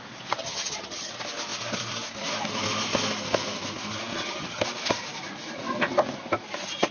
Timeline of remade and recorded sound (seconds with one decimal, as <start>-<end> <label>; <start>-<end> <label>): 0.0-0.4 recorded; 0.4-1.1 remade; 1.1-4.1 recorded; 4.1-4.6 remade; 4.6-6.9 recorded